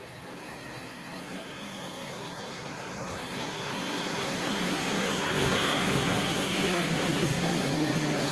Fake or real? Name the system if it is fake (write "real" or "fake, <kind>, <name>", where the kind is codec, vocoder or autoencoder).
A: fake, codec, SNAC